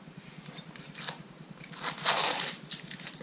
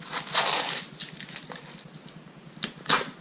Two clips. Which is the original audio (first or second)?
second